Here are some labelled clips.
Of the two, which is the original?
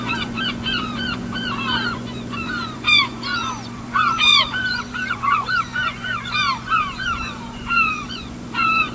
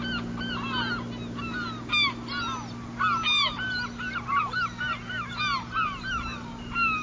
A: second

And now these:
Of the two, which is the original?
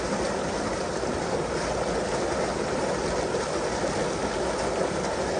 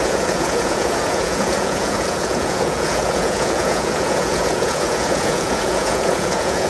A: first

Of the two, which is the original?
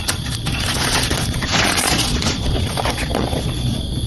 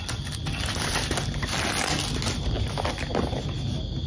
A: second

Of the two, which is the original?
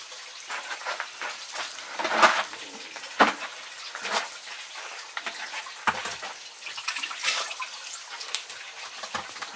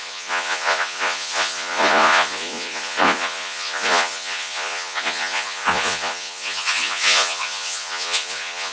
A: first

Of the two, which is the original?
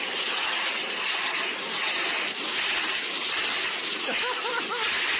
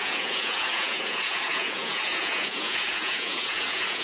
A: first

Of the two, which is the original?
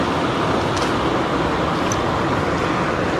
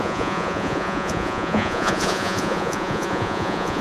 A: first